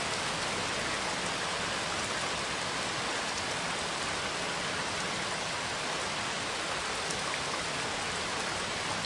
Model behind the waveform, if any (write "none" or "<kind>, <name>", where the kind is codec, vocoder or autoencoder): none